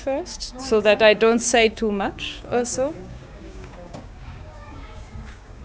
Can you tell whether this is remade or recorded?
remade